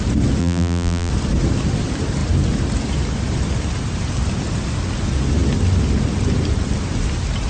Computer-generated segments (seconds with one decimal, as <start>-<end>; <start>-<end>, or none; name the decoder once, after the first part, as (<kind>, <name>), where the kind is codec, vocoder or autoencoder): 0.4-1.1 (vocoder, BigVGAN v2)